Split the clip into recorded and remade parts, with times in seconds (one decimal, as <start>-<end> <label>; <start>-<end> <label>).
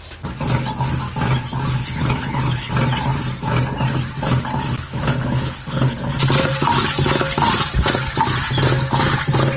0.0-1.8 recorded; 1.8-2.7 remade; 2.7-4.7 recorded; 4.7-6.1 remade; 6.1-9.6 recorded